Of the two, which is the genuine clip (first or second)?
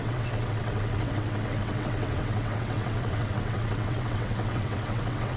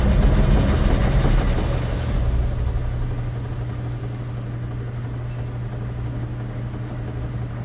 second